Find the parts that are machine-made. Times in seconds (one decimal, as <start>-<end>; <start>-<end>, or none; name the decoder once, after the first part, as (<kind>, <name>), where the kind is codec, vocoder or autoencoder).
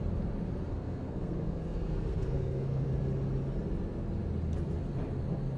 0.7-2.9 (codec, SNAC)